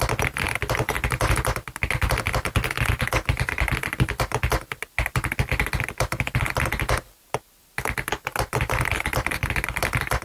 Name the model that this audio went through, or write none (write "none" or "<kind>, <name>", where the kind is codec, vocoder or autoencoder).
none